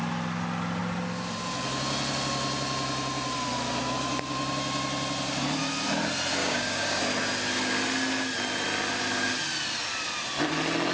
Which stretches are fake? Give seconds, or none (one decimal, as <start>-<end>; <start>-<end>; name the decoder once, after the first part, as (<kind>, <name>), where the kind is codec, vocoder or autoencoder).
6.4-7.0 (codec, DAC)